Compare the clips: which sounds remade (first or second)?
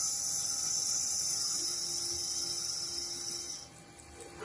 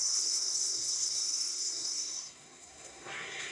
second